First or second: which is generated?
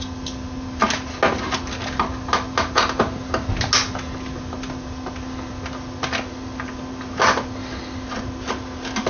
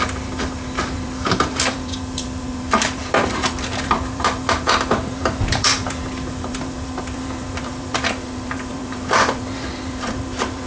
second